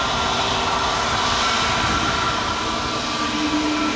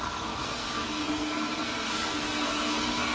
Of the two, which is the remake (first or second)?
second